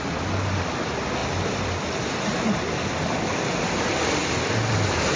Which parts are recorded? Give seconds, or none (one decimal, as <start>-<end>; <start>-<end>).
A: 0.0-1.2; 2.1-5.2